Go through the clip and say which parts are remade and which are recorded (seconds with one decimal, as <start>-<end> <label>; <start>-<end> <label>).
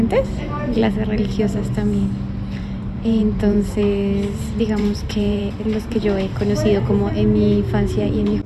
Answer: 0.0-0.8 remade; 0.8-2.6 recorded; 2.6-3.8 remade; 3.8-4.6 recorded; 4.6-5.4 remade; 5.4-7.9 recorded; 7.9-8.5 remade